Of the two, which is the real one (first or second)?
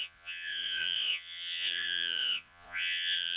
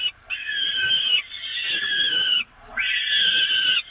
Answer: second